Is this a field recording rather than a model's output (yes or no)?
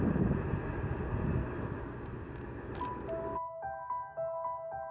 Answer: yes